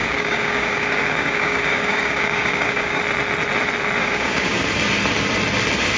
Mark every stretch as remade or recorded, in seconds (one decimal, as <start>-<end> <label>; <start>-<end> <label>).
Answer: 0.0-3.0 remade; 3.0-4.0 recorded; 4.0-4.6 remade; 4.6-6.0 recorded